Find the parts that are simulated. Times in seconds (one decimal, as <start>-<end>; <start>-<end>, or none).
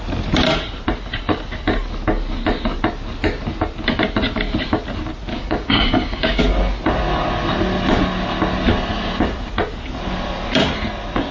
5.3-6.4